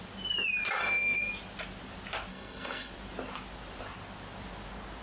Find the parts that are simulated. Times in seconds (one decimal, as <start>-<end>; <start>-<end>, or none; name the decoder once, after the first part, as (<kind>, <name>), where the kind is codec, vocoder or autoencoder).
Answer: 0.8-1.3 (codec, SNAC); 2.3-2.9